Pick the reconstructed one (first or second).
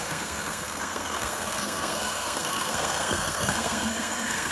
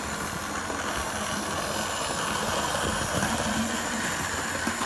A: first